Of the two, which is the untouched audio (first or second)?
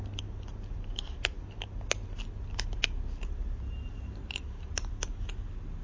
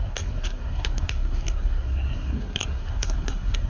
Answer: first